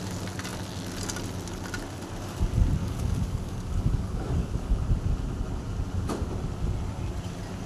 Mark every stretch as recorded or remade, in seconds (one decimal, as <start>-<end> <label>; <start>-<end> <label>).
0.0-2.8 recorded; 2.8-4.8 remade; 4.8-7.7 recorded